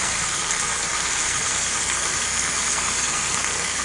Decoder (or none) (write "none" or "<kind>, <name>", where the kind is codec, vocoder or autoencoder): codec, SNAC